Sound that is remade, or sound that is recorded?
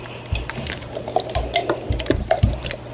recorded